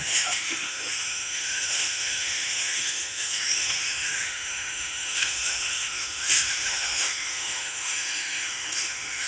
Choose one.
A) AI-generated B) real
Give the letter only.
A